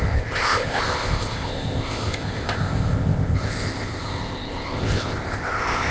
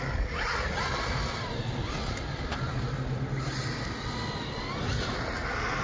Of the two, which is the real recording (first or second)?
second